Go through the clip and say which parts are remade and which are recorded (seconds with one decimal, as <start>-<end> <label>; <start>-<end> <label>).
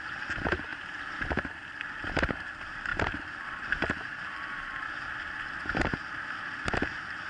0.0-7.3 recorded